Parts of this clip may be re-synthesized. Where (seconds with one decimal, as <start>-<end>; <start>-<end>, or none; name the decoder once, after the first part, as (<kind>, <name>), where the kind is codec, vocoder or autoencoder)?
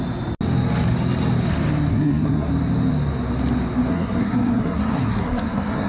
1.9-2.5 (codec, SNAC); 3.9-5.9